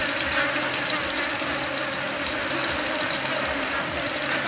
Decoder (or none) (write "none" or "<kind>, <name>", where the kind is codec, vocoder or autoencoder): none